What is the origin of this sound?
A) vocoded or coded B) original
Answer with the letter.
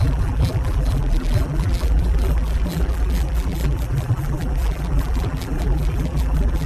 A